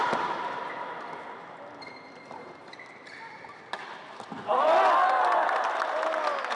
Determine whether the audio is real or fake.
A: real